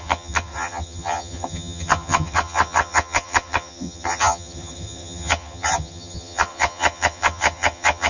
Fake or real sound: fake